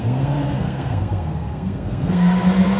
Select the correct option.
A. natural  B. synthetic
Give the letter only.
B